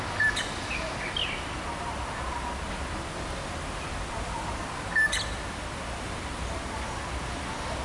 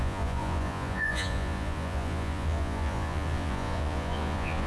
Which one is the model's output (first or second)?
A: second